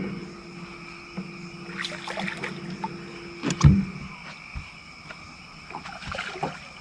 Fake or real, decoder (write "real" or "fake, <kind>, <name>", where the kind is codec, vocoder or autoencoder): real